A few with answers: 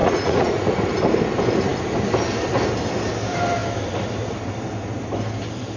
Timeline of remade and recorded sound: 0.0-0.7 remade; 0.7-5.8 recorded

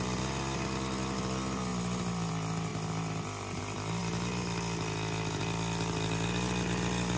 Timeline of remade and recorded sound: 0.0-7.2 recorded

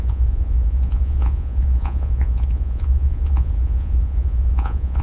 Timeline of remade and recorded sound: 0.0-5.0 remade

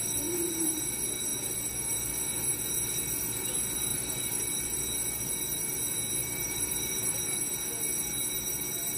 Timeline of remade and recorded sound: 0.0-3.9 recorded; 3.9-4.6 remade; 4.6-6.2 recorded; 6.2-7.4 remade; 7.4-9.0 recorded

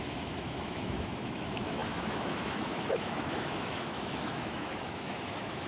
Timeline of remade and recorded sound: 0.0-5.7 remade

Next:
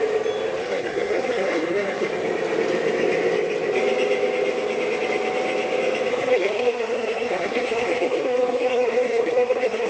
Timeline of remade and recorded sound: 0.0-0.6 recorded; 0.6-2.1 remade; 2.1-6.1 recorded; 6.1-9.9 remade

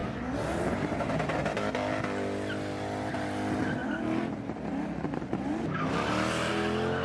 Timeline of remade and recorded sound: 0.0-7.0 recorded